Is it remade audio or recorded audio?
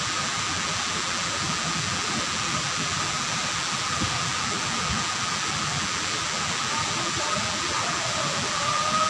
remade